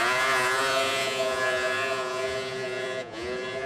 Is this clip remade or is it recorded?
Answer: remade